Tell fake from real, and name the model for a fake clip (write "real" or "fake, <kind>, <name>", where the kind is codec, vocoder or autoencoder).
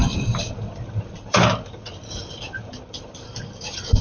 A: fake, vocoder, BigVGAN v2